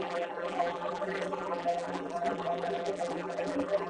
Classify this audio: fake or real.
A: fake